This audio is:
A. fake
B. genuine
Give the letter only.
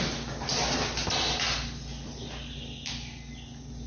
B